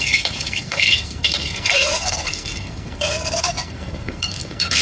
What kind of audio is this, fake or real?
fake